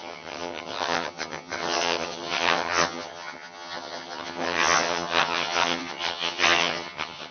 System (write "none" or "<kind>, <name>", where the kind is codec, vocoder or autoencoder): vocoder, HiFi-GAN